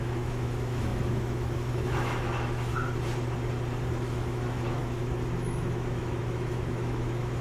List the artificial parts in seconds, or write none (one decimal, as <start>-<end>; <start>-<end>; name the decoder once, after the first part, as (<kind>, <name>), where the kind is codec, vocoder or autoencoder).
0.0-2.7 (autoencoder, DAC-VAE); 3.9-7.4